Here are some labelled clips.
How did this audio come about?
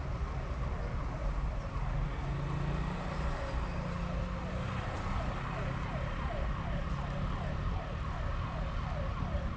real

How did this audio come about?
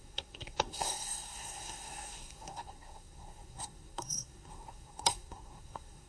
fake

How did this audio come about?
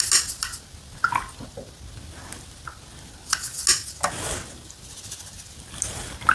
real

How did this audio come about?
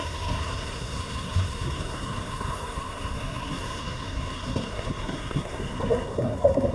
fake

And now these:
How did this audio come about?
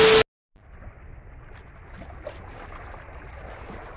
real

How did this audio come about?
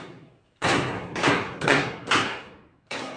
fake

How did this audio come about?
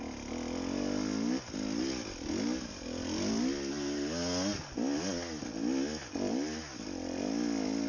real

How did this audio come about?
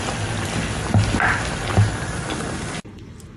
real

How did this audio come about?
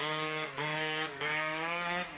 fake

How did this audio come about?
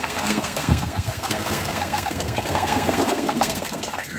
fake